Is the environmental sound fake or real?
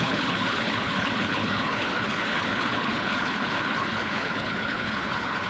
fake